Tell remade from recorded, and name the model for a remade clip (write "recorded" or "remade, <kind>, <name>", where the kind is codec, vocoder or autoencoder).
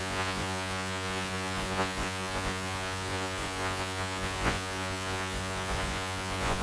remade, vocoder, Vocos